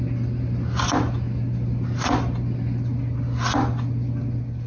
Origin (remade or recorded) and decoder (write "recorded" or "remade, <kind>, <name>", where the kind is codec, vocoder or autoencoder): recorded